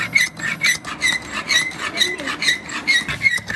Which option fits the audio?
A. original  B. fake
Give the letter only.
A